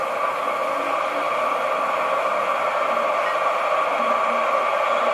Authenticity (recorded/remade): recorded